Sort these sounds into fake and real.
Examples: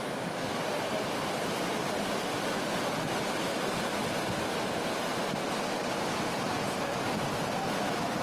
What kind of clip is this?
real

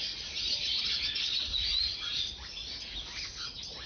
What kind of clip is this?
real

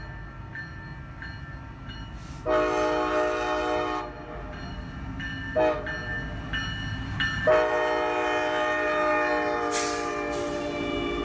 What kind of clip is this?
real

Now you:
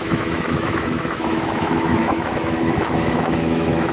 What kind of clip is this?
fake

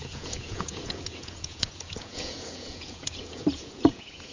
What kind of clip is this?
fake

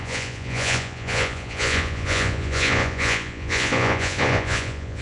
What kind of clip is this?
fake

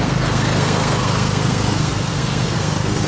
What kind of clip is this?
fake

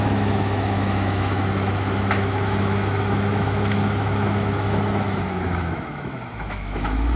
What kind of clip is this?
fake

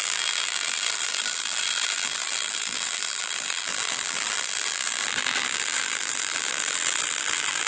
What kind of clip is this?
fake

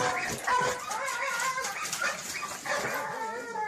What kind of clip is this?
real